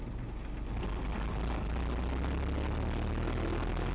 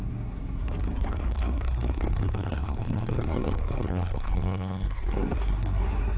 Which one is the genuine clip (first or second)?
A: first